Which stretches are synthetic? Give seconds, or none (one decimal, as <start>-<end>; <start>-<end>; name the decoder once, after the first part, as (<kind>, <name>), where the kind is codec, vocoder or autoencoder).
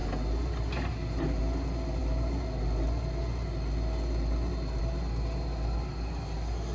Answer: none